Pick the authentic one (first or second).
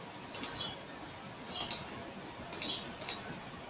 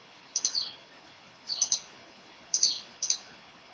first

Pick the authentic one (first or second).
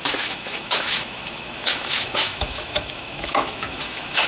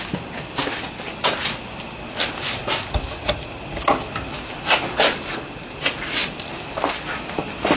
second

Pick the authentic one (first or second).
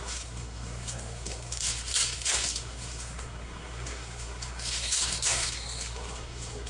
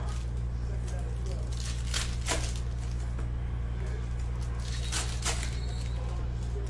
second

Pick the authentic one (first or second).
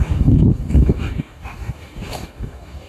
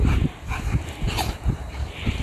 second